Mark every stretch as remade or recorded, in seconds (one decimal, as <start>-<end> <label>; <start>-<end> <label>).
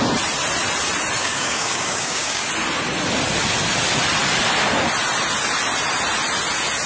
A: 0.0-1.2 recorded; 1.2-2.5 remade; 2.5-6.9 recorded